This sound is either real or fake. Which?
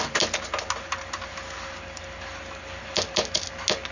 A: real